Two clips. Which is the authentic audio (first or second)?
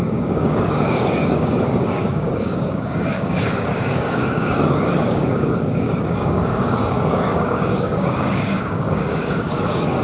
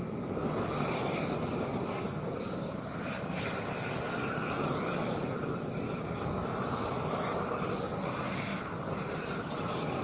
second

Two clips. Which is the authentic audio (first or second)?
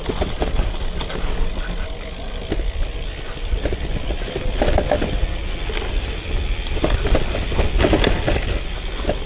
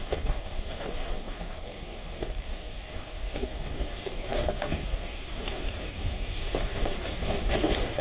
first